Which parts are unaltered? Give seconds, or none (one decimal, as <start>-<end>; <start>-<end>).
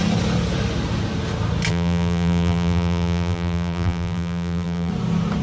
0.0-1.7; 4.9-5.4